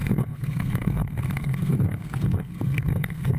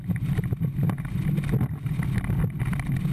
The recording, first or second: second